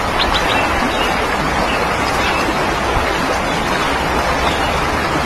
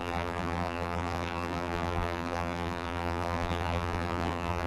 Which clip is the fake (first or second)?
second